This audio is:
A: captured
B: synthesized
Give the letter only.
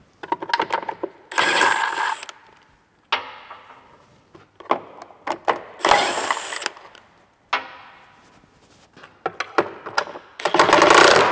A